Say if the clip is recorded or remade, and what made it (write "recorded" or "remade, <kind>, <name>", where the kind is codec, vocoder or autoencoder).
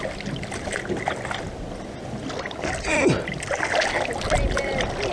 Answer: recorded